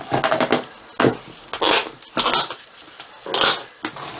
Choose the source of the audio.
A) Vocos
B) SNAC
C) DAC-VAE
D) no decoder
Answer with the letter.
D